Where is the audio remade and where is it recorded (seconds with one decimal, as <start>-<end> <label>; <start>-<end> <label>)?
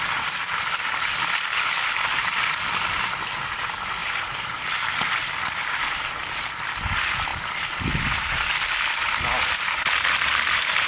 0.0-10.9 remade